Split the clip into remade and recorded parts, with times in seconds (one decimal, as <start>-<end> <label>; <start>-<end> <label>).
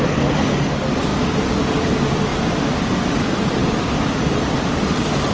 0.0-1.1 remade; 1.1-1.9 recorded; 1.9-2.3 remade; 2.3-3.2 recorded; 3.2-3.6 remade; 3.6-4.7 recorded; 4.7-5.3 remade